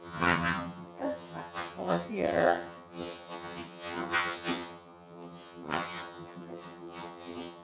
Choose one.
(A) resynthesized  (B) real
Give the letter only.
A